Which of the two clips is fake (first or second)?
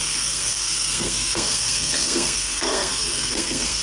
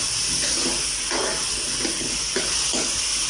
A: first